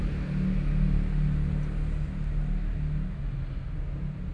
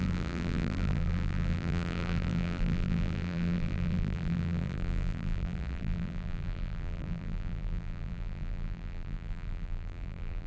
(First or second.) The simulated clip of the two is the second